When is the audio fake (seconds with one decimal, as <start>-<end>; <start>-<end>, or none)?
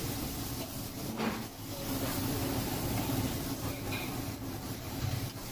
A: 2.4-5.1